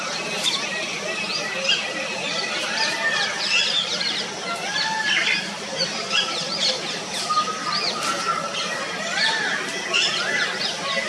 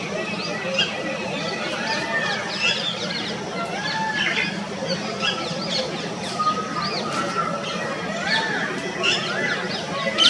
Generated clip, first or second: first